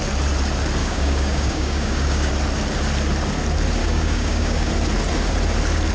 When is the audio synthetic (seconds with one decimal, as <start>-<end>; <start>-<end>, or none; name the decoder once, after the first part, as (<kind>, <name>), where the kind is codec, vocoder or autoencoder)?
0.8-2.3 (codec, DAC); 3.8-4.7